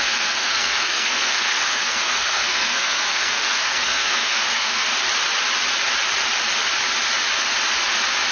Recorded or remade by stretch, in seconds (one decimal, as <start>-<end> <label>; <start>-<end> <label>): 0.0-4.9 remade; 4.9-8.3 recorded